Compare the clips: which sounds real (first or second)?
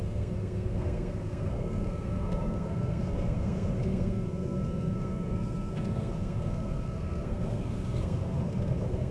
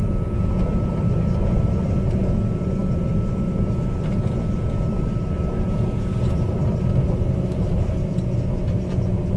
second